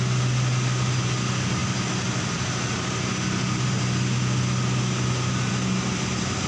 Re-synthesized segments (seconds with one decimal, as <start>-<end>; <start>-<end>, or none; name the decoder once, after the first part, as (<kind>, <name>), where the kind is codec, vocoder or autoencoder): none